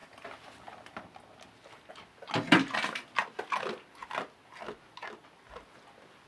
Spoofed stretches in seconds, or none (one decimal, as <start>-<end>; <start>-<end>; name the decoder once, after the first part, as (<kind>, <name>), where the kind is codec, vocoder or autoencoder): none